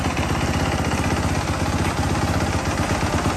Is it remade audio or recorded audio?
recorded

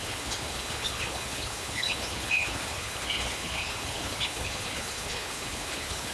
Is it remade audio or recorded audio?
remade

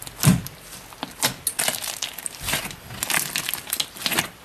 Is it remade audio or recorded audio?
recorded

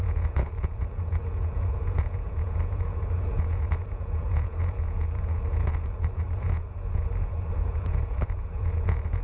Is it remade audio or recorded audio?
remade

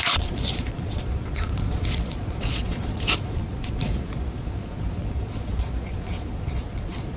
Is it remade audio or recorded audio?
remade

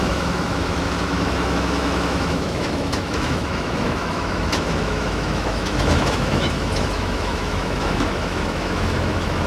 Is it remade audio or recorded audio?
remade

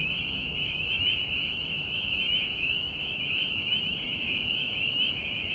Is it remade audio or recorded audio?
remade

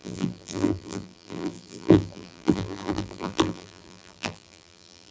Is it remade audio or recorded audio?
remade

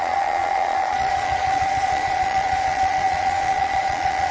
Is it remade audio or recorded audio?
remade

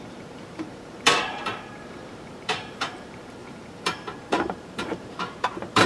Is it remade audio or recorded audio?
remade